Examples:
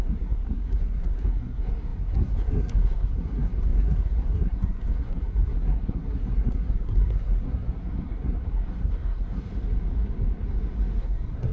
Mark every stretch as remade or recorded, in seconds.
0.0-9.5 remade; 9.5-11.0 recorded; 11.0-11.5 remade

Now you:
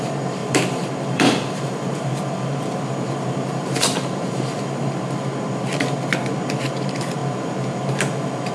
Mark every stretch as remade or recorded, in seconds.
0.0-0.4 recorded; 0.4-2.8 remade; 2.8-8.5 recorded

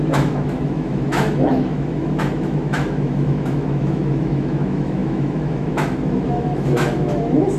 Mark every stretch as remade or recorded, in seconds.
0.0-7.6 remade

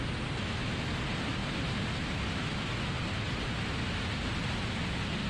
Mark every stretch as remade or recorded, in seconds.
0.0-1.4 recorded; 1.4-3.5 remade; 3.5-5.3 recorded

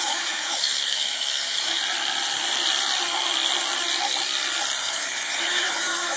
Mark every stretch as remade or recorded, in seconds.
0.0-1.8 remade; 1.8-4.8 recorded; 4.8-6.2 remade

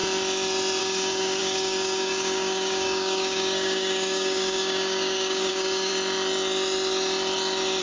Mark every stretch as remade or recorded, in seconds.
0.0-0.8 recorded; 0.8-5.9 remade; 5.9-7.8 recorded

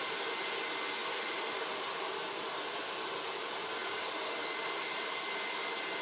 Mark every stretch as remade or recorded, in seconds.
0.0-1.0 recorded; 1.0-2.8 remade; 2.8-6.0 recorded